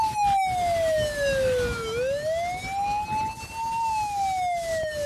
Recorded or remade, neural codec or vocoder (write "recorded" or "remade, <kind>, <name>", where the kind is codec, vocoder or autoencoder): recorded